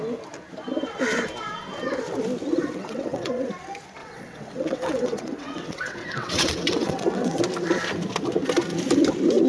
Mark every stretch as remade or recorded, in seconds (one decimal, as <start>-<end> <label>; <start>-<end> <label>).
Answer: 0.0-2.6 recorded; 2.6-3.5 remade; 3.5-4.0 recorded; 4.0-7.4 remade; 7.4-9.5 recorded